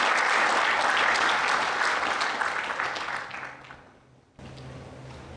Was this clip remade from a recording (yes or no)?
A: no